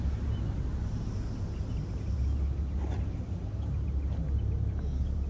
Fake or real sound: real